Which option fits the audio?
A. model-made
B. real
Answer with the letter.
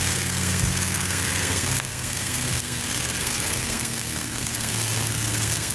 A